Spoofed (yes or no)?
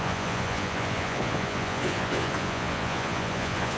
yes